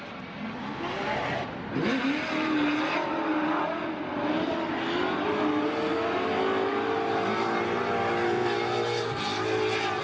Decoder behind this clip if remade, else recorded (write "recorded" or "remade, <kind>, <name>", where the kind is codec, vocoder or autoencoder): recorded